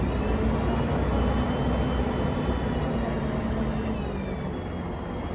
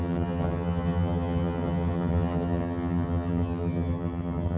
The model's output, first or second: second